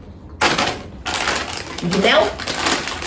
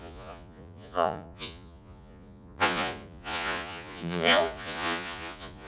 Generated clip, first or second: second